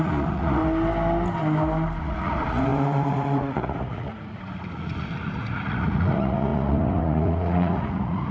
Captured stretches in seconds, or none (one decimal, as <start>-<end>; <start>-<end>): 0.6-2.0